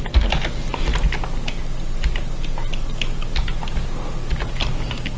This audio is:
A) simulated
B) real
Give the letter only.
B